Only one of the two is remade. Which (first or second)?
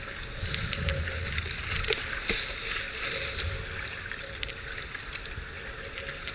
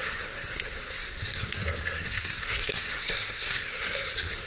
second